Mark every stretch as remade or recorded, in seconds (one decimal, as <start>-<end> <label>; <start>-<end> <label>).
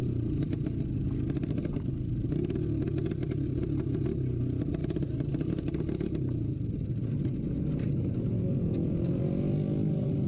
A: 0.0-4.8 recorded; 4.8-5.5 remade; 5.5-10.3 recorded